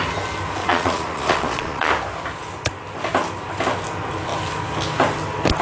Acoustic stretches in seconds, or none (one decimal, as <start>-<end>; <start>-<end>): 0.0-0.6; 1.9-5.6